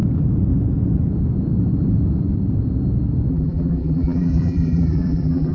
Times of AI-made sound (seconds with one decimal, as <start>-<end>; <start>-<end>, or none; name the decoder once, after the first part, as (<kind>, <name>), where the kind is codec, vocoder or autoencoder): 3.3-5.5 (vocoder, BigVGAN v2)